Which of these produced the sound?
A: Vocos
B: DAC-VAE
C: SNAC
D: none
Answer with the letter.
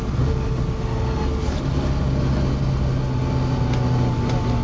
D